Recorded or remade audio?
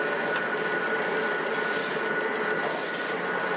recorded